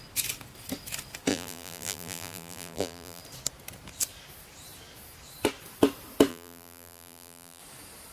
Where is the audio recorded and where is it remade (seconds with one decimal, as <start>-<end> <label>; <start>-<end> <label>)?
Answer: 0.0-1.3 recorded; 1.3-3.2 remade; 3.2-6.3 recorded; 6.3-7.6 remade; 7.6-8.1 recorded